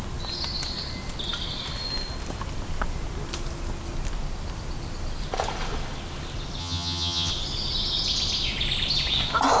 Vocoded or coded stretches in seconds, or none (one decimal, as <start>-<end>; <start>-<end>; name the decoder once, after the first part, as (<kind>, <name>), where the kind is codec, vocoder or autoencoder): 6.6-7.3 (vocoder, HiFi-GAN)